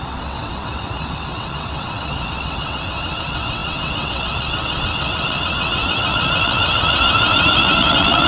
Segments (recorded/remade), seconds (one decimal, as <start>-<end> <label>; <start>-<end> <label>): 0.0-8.3 remade